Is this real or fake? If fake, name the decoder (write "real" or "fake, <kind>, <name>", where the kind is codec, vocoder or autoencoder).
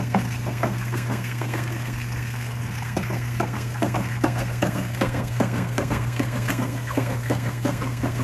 fake, codec, SNAC